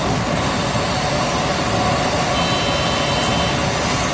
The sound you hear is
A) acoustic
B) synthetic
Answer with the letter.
A